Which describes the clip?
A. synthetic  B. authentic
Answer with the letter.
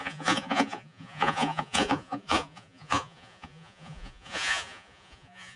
A